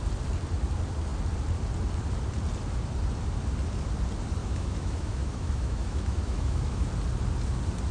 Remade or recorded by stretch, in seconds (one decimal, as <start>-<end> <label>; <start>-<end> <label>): 0.0-4.4 recorded; 4.4-6.9 remade; 6.9-7.9 recorded